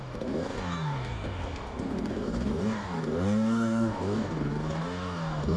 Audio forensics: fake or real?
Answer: fake